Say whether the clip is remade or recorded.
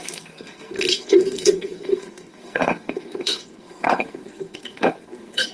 remade